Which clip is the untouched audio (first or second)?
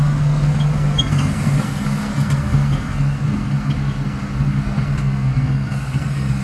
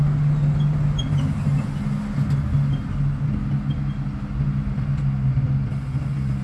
second